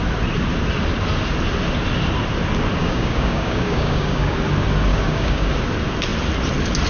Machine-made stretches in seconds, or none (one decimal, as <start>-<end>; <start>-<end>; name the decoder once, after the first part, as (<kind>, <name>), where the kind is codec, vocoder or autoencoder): 2.8-4.4 (codec, DAC); 4.9-5.5